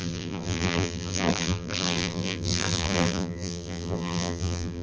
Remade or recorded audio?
remade